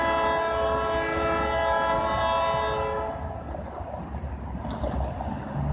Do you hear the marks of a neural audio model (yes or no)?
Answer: no